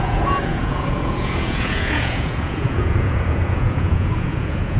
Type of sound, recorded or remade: remade